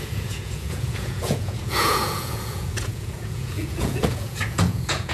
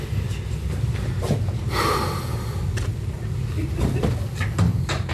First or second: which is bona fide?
second